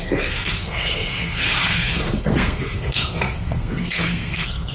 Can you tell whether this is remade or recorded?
remade